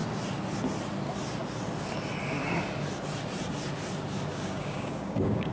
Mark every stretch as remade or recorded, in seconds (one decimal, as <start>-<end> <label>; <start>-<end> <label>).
0.0-4.3 recorded; 4.3-5.5 remade